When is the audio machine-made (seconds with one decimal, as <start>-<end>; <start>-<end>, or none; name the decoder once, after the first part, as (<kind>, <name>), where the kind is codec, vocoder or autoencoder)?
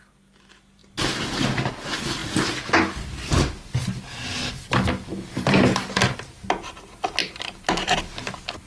5.1-5.6 (vocoder, BigVGAN v2); 7.2-8.0